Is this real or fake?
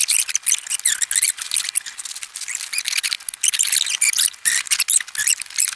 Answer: real